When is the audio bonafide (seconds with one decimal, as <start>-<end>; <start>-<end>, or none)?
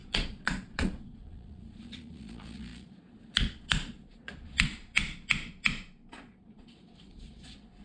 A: 4.8-6.1